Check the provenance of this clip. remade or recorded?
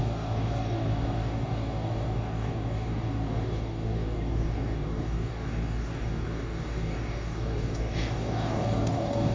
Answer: remade